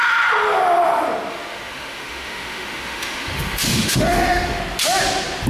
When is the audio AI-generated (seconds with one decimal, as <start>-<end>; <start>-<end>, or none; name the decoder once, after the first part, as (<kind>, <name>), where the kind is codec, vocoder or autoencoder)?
1.3-4.6 (autoencoder, DAC-VAE)